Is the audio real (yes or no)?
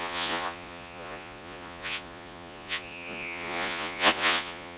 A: no